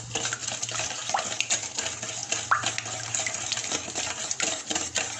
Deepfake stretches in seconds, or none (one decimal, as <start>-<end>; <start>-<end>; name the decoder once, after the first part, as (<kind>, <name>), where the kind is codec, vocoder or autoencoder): none